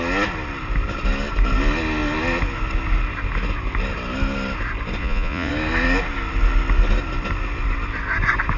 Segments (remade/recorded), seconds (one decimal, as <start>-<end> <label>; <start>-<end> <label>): 0.0-5.0 recorded; 5.0-5.5 remade; 5.5-8.6 recorded